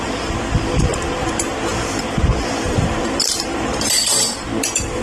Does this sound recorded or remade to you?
remade